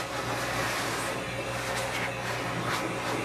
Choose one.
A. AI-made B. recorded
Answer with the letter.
B